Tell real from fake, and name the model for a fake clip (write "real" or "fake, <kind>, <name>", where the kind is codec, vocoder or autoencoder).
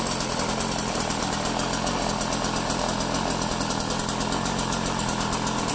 real